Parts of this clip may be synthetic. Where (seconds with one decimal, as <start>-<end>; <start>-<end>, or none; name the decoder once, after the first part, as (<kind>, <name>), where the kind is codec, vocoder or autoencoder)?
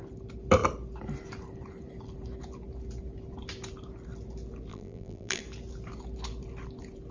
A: 4.7-5.4 (vocoder, BigVGAN v2)